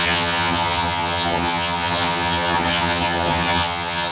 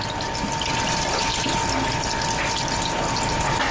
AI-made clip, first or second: first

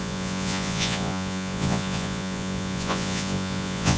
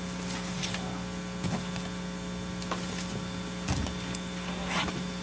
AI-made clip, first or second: first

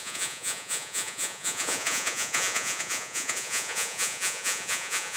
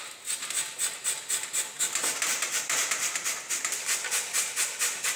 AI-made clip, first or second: first